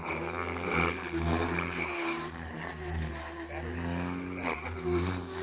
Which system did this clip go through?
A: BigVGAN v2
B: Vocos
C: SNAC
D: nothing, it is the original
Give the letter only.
D